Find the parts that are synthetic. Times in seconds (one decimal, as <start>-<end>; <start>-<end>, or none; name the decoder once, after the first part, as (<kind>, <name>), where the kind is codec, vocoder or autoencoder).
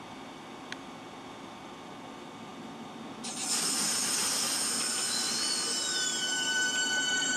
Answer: none